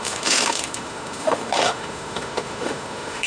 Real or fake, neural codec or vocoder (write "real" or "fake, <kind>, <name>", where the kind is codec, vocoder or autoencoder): fake, autoencoder, DAC-VAE